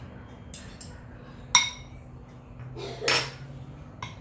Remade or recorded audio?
recorded